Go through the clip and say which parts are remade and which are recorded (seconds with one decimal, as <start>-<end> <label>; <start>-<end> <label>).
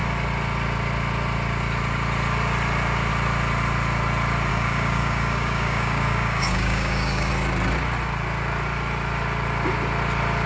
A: 0.0-4.5 recorded; 4.5-7.3 remade; 7.3-10.5 recorded